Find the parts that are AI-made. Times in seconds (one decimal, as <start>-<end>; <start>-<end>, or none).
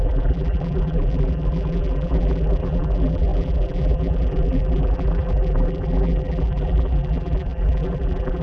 0.0-8.4